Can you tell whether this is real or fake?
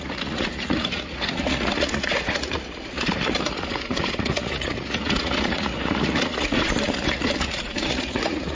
fake